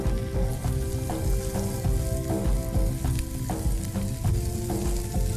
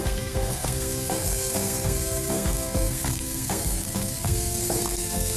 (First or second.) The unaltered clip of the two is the first